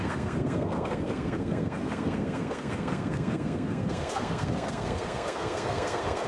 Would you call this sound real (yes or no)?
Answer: no